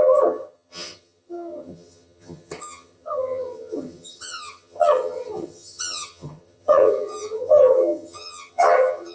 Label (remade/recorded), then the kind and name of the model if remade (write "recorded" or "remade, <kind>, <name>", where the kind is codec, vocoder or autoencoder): remade, vocoder, HiFi-GAN